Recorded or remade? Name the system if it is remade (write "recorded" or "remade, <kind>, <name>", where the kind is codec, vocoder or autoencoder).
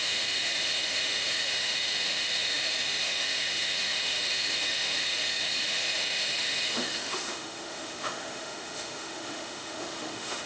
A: remade, autoencoder, DAC-VAE